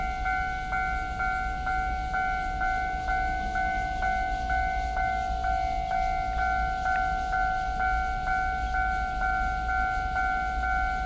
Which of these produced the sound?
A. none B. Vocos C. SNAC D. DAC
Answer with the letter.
A